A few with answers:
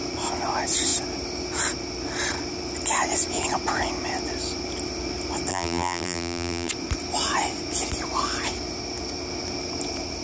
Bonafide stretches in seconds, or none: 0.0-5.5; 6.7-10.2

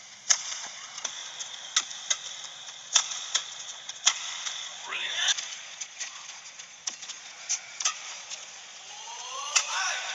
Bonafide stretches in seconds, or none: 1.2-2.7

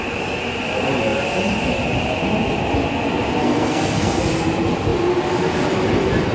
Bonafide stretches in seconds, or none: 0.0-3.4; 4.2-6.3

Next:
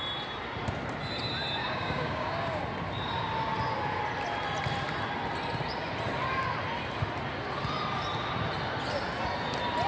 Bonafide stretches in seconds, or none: 0.0-1.6; 2.6-9.9